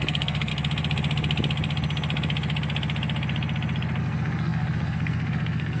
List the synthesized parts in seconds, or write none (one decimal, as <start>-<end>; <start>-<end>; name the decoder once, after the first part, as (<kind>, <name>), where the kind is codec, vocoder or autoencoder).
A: 0.0-0.5 (codec, SNAC); 4.0-5.8